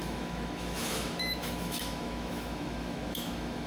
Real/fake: fake